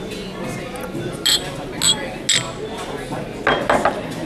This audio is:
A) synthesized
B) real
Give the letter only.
B